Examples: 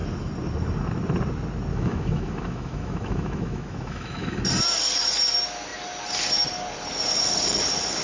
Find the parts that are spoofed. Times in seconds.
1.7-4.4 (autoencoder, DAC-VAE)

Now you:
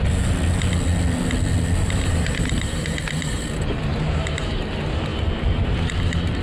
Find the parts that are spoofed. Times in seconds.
1.8-4.6 (vocoder, BigVGAN v2)

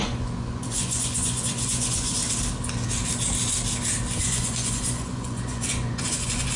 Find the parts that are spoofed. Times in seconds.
0.0-2.2 (vocoder, Vocos); 4.2-6.6

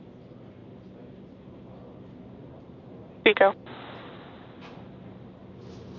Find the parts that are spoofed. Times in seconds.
none

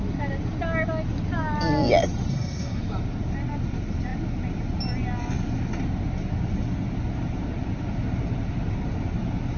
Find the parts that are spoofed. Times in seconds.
2.3-2.8 (codec, SNAC)